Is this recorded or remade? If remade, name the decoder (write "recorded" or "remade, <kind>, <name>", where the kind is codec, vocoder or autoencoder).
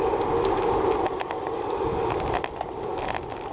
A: recorded